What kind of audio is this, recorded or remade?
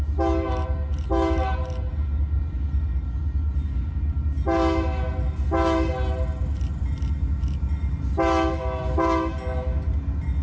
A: recorded